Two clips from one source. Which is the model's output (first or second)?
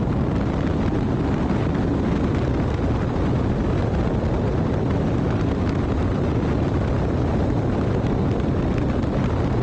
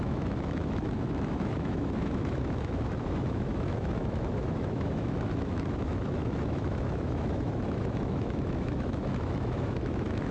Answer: second